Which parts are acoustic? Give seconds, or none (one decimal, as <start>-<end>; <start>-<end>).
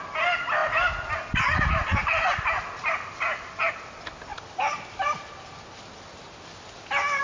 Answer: 0.0-7.2